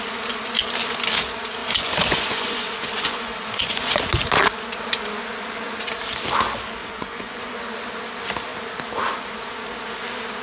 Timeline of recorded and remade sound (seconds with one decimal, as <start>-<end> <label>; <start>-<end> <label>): 0.0-1.6 recorded; 1.6-4.0 remade; 4.0-6.8 recorded; 6.8-7.5 remade; 7.5-10.4 recorded

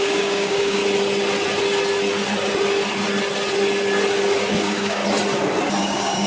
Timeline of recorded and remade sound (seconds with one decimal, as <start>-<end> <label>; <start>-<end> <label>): 0.0-0.8 remade; 0.8-4.6 recorded; 4.6-5.0 remade; 5.0-5.8 recorded; 5.8-6.3 remade

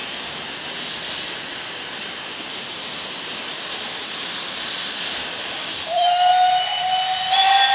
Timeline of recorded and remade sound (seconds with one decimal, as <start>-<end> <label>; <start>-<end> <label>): 0.0-7.7 recorded